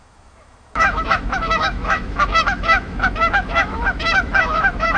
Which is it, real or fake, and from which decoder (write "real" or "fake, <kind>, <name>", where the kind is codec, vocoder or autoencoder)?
fake, autoencoder, DAC-VAE